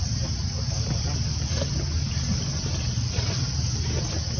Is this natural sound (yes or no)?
yes